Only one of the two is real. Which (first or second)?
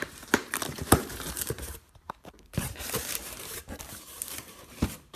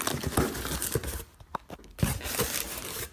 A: second